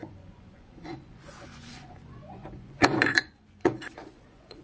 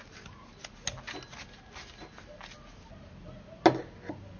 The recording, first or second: second